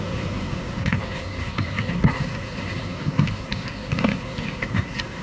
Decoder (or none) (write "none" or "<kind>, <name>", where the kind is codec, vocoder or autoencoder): codec, SNAC